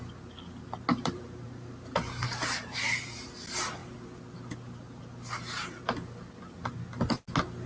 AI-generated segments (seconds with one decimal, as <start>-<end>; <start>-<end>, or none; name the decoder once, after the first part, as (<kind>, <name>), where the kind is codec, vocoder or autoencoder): 0.9-2.8 (vocoder, BigVGAN v2)